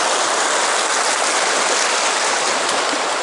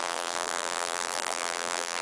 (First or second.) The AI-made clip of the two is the second